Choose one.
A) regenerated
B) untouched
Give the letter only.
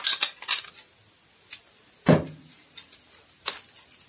B